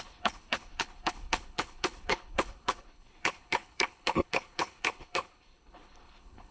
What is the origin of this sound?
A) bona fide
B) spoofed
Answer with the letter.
B